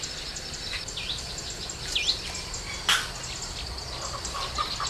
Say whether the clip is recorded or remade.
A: recorded